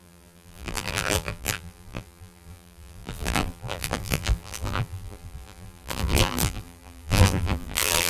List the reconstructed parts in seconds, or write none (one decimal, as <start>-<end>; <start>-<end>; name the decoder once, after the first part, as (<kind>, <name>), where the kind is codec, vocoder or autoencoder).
0.0-8.1 (vocoder, BigVGAN v2)